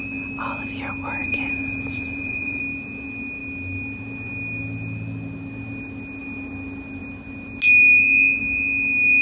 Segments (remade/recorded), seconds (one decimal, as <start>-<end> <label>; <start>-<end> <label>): 0.0-1.2 recorded; 1.2-2.6 remade; 2.6-9.2 recorded